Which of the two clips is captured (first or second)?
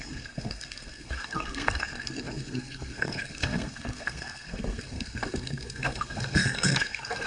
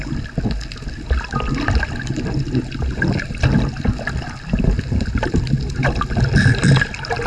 second